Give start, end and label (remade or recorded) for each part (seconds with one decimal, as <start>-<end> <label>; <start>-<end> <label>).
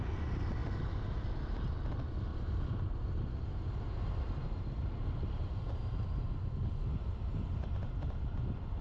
0.0-2.3 recorded; 2.3-6.2 remade; 6.2-8.8 recorded